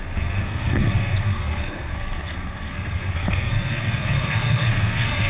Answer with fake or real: fake